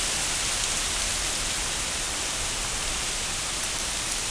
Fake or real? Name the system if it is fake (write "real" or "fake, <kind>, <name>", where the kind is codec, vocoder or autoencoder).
real